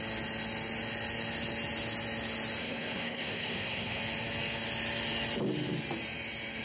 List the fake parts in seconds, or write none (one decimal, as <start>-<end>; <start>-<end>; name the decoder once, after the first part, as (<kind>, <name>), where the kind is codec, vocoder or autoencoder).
2.6-4.0 (codec, SNAC)